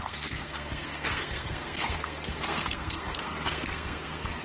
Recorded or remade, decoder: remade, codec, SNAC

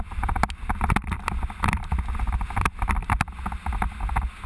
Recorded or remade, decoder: recorded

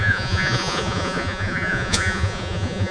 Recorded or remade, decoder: remade, vocoder, Vocos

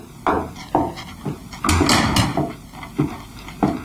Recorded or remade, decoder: recorded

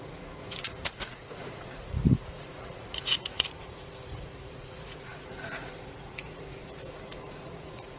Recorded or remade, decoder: remade, vocoder, Vocos